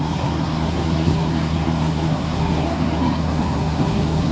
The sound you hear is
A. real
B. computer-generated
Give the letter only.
B